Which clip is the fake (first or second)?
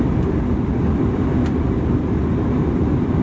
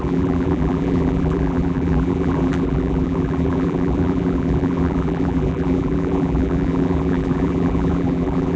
second